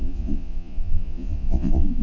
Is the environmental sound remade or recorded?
remade